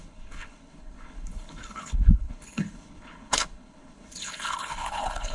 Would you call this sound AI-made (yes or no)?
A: yes